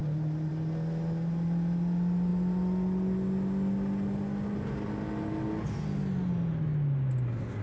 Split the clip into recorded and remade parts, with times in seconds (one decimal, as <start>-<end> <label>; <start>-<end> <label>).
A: 0.0-7.6 recorded